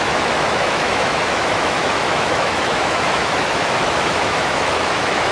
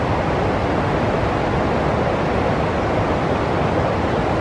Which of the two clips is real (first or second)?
second